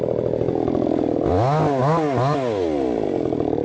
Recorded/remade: recorded